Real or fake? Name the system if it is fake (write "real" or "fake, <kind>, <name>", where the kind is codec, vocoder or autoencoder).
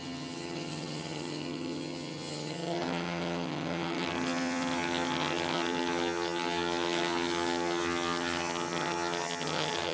fake, vocoder, HiFi-GAN